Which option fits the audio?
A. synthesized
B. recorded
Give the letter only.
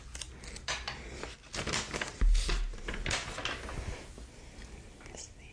B